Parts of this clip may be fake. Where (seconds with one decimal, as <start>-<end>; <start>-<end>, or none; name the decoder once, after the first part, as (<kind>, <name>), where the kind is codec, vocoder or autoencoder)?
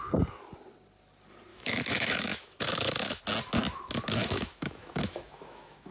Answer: 1.5-3.2 (autoencoder, DAC-VAE); 4.2-5.9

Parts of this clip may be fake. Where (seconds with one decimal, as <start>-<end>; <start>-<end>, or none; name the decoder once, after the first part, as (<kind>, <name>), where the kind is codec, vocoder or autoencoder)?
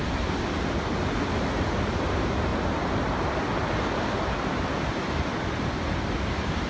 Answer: none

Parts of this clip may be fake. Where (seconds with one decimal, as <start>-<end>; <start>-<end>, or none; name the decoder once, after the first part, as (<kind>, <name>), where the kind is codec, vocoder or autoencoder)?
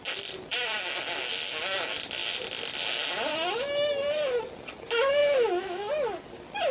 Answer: 5.2-5.9 (autoencoder, DAC-VAE)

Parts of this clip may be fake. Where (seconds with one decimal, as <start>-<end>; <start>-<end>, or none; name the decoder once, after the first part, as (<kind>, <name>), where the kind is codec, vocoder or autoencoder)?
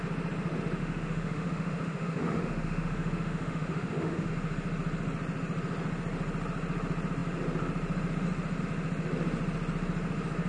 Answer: 0.8-4.3 (autoencoder, DAC-VAE)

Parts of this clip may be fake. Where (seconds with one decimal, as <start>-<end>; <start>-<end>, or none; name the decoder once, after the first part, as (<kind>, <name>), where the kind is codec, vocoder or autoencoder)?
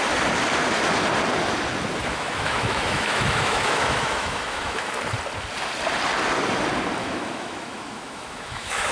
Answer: 2.1-4.9 (autoencoder, DAC-VAE); 7.0-8.9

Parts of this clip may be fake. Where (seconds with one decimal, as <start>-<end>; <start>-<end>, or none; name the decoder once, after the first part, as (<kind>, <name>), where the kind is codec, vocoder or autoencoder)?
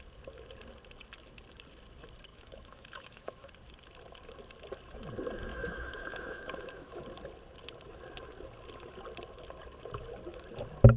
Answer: 2.3-3.5 (autoencoder, DAC-VAE); 5.5-7.0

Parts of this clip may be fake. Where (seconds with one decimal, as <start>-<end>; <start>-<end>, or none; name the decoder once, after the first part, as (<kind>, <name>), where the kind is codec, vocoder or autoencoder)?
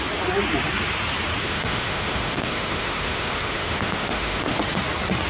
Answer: 1.4-4.6 (autoencoder, DAC-VAE)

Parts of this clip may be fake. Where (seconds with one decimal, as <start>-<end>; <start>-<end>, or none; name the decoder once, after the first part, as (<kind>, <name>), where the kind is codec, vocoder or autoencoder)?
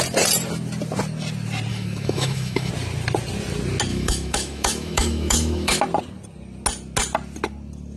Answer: 1.7-2.7 (autoencoder, DAC-VAE); 3.9-5.8